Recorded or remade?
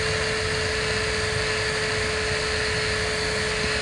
recorded